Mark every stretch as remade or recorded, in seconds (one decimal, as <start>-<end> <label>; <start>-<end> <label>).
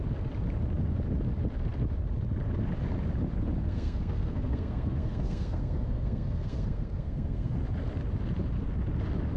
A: 0.0-3.6 recorded; 3.6-7.6 remade; 7.6-9.4 recorded